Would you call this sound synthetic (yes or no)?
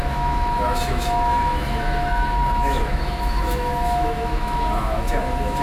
yes